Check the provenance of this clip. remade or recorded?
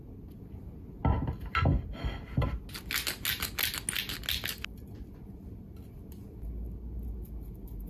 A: recorded